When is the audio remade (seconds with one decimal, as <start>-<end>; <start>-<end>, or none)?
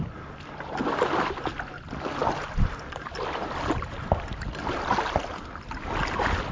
none